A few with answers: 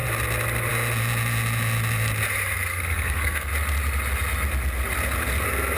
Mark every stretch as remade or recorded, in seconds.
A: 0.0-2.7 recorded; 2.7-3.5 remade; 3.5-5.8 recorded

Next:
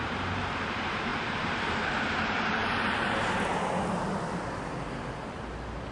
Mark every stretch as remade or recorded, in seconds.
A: 0.0-2.6 remade; 2.6-5.9 recorded

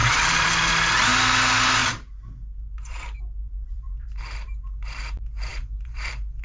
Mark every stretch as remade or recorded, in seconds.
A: 0.0-0.7 remade; 0.7-1.8 recorded; 1.8-5.1 remade; 5.1-5.5 recorded; 5.5-6.4 remade